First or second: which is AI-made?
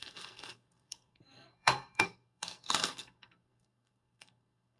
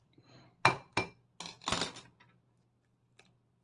first